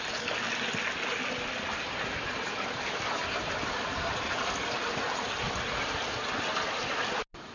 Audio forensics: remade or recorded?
recorded